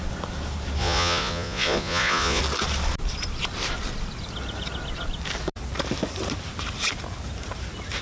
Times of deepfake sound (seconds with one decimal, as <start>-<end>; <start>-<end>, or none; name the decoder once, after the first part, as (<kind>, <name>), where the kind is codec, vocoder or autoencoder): 0.8-2.4 (vocoder, Vocos)